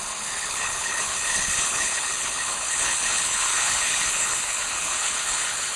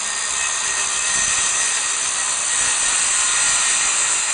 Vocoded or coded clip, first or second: first